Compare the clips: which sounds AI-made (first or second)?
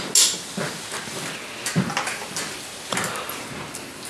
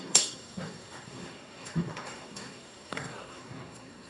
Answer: second